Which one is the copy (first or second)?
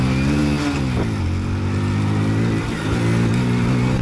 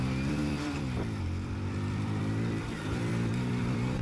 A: second